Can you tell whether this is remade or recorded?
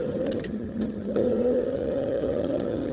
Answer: remade